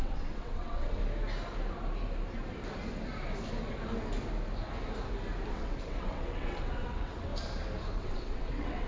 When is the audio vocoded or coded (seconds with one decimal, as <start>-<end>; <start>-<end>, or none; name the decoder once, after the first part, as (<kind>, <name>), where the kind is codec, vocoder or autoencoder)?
0.0-1.0 (vocoder, WaveNeXt); 5.5-7.3; 7.9-8.9